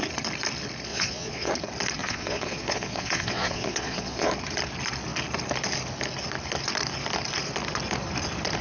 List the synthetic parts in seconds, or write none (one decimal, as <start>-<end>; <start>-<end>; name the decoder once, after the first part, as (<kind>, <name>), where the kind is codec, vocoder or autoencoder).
0.9-1.5 (vocoder, Vocos); 2.0-4.3